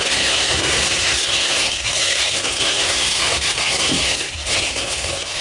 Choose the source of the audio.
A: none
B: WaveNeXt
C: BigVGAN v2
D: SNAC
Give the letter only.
D